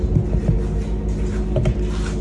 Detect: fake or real real